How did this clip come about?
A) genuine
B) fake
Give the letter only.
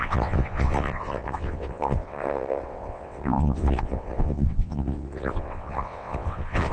B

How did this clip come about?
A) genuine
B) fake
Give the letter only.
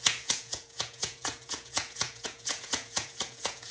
B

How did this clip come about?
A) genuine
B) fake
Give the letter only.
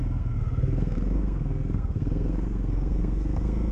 B